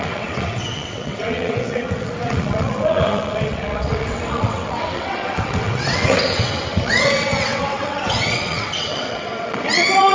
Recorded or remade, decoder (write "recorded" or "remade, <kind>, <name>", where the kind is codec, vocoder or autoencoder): remade, vocoder, WaveNeXt